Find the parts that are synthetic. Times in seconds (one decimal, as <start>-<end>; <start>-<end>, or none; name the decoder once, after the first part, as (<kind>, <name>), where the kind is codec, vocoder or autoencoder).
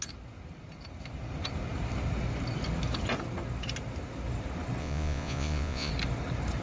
4.8-5.9 (vocoder, Vocos)